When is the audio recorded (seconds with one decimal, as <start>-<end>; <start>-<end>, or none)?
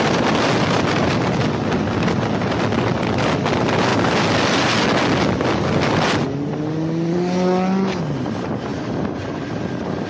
0.0-8.7